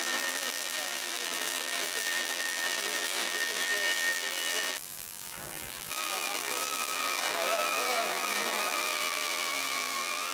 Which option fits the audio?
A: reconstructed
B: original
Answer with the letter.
A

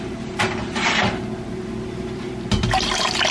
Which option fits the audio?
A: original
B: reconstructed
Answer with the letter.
A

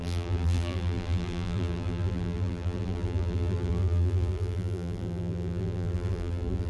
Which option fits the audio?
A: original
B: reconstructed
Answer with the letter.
B